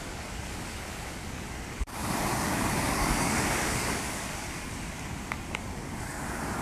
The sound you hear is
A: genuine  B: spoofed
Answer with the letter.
B